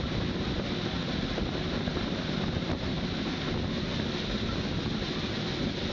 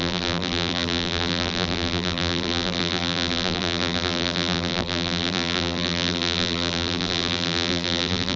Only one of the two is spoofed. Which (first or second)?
second